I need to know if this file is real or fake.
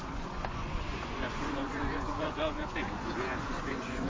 fake